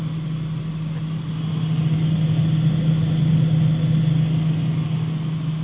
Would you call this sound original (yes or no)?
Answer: yes